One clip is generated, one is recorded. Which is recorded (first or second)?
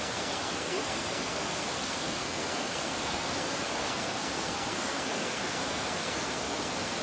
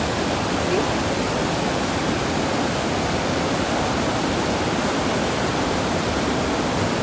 second